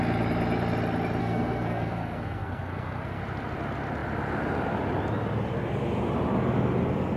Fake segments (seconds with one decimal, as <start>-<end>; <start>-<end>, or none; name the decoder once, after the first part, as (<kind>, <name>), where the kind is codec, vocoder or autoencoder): 1.2-3.2 (codec, SNAC)